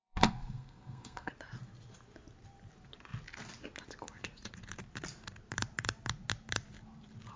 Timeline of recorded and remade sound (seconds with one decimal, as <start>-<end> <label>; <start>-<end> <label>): 0.0-1.3 remade; 1.3-7.4 recorded

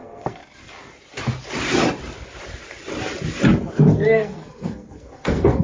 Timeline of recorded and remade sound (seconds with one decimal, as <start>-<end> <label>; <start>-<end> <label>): 0.0-0.4 remade; 0.4-3.7 recorded; 3.7-5.6 remade

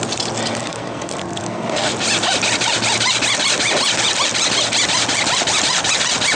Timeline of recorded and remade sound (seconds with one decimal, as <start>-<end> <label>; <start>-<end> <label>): 0.0-0.6 recorded; 0.6-1.9 remade; 1.9-6.4 recorded